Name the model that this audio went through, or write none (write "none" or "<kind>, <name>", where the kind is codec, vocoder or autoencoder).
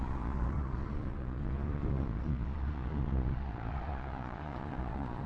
vocoder, Vocos